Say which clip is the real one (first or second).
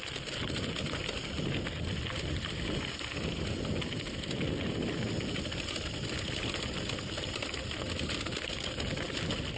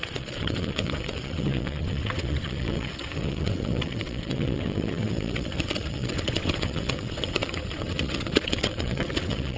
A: first